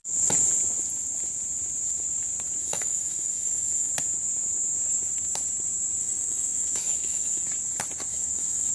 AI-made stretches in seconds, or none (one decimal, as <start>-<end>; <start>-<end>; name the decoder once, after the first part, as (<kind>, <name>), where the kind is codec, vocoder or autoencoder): 2.6-3.9 (autoencoder, DAC-VAE); 6.0-7.4; 8.1-8.7